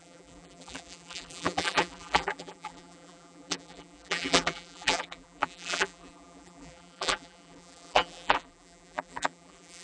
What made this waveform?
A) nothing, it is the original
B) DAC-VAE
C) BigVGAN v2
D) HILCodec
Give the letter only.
C